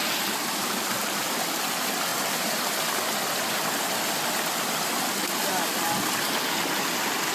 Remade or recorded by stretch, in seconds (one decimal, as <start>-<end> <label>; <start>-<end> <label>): 0.0-7.3 recorded

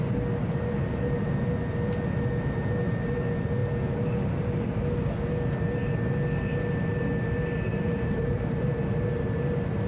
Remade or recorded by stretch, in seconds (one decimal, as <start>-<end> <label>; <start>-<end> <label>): 0.0-7.7 recorded; 7.7-8.7 remade; 8.7-9.9 recorded

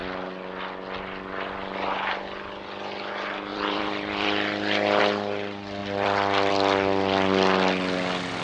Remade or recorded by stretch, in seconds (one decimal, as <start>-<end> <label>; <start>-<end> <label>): 0.0-3.5 recorded; 3.5-5.0 remade; 5.0-5.8 recorded; 5.8-6.5 remade; 6.5-8.4 recorded

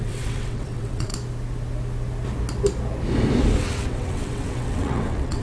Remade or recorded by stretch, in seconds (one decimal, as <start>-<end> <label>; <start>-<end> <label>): 0.0-1.1 remade; 1.1-3.6 recorded; 3.6-5.4 remade

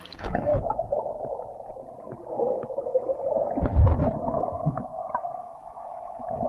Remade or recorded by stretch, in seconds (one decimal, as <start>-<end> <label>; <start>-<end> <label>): 0.0-0.5 remade; 0.5-4.4 recorded; 4.4-4.9 remade; 4.9-5.4 recorded; 5.4-6.5 remade

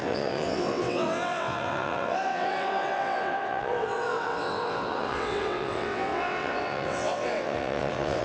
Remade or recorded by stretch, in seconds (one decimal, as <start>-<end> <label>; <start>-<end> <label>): 0.0-8.2 remade

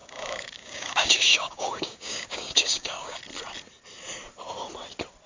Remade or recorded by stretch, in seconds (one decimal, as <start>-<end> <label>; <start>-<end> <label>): 0.0-3.2 remade; 3.2-5.3 recorded

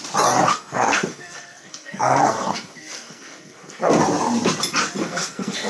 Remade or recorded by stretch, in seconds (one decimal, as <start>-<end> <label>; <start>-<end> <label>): 0.0-0.5 recorded; 0.5-3.9 remade; 3.9-5.0 recorded; 5.0-5.7 remade